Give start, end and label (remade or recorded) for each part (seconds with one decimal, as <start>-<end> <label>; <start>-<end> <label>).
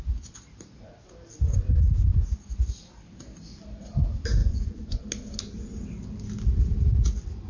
0.0-4.4 recorded; 4.4-5.0 remade; 5.0-7.5 recorded